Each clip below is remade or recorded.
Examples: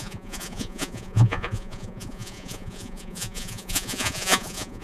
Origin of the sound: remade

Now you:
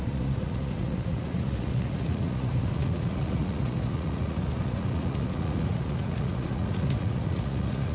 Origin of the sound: remade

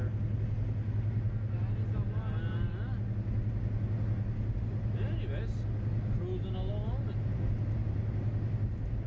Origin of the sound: recorded